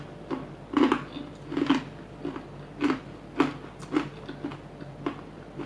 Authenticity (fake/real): real